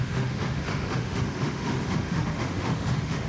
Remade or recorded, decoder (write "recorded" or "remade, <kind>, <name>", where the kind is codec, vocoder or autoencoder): remade, autoencoder, DAC-VAE